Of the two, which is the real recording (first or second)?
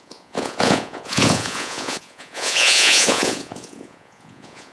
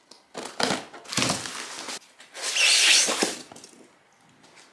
second